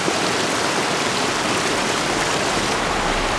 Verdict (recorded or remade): recorded